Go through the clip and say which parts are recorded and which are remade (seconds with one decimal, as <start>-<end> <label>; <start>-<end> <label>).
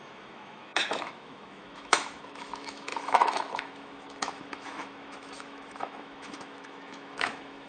0.0-7.7 remade